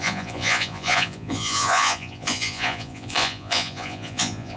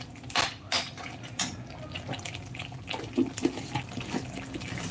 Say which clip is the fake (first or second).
first